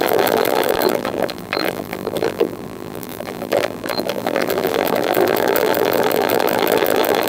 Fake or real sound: fake